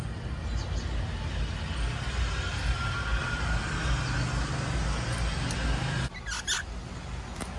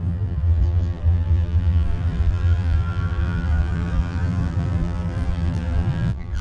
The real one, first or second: first